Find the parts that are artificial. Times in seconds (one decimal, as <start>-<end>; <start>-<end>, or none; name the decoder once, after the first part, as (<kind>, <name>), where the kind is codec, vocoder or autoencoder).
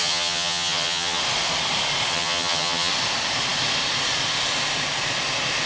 0.0-1.2 (vocoder, HiFi-GAN); 2.1-2.9